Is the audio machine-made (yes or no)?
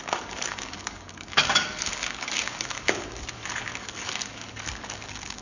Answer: yes